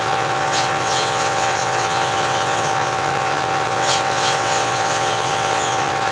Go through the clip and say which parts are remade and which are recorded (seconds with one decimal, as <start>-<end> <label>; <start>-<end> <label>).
0.0-6.1 remade